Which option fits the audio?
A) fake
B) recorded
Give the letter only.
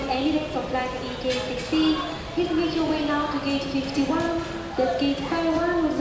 B